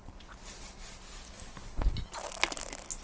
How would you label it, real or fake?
real